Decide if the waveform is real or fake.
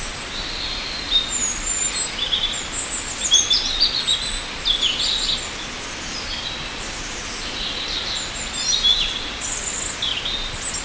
real